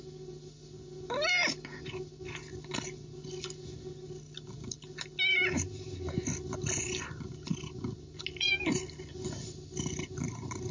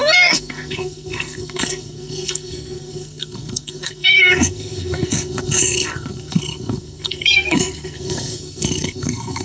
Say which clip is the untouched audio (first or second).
first